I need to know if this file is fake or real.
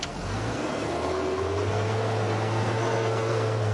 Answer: fake